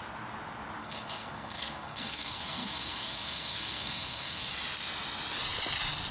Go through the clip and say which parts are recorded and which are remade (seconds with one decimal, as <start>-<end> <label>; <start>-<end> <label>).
0.0-0.8 recorded; 0.8-4.5 remade; 4.5-6.1 recorded